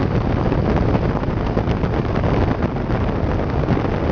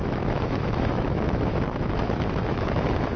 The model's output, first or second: second